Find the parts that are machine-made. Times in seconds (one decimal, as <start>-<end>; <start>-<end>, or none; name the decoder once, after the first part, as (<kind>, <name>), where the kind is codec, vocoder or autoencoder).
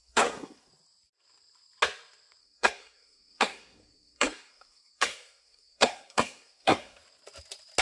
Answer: 0.0-0.7 (codec, SNAC); 2.4-7.0